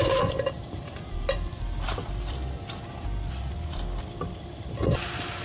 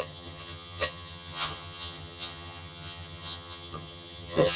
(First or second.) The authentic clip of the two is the first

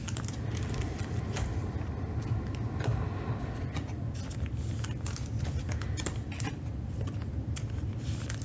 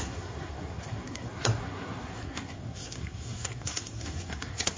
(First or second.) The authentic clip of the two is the first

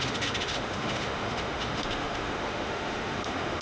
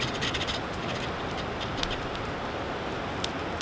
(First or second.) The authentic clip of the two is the second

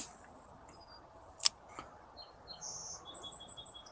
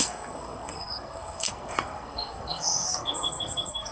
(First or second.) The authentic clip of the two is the first